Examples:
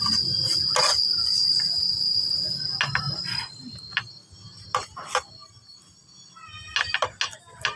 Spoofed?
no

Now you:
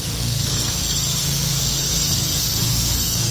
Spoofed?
yes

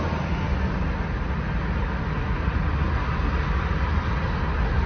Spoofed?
no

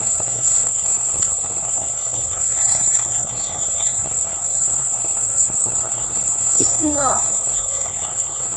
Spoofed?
yes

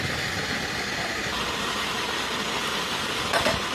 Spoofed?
no